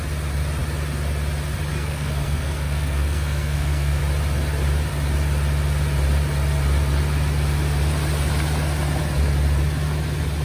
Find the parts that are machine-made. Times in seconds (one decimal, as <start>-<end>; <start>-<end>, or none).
1.7-4.0